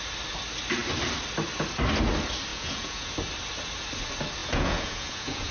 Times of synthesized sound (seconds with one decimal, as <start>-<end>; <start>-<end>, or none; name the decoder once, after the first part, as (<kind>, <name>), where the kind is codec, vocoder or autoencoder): 2.5-3.1 (vocoder, Vocos); 4.4-5.5